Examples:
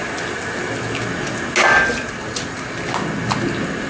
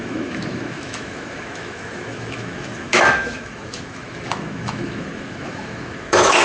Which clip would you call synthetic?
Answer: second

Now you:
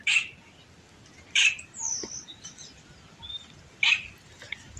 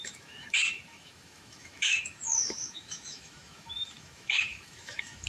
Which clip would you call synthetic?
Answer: second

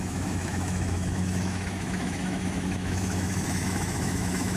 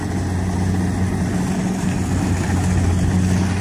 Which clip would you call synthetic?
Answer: first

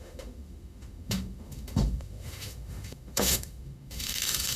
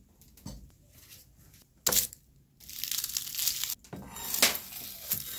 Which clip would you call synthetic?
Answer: first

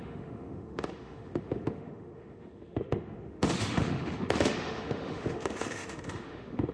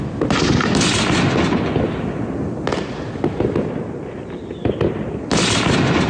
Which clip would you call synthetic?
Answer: first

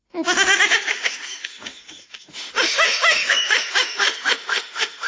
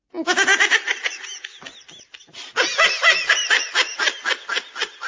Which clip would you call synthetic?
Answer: first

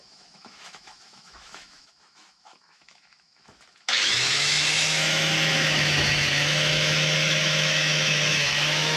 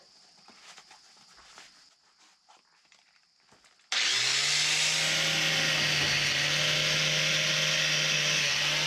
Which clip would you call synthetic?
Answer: first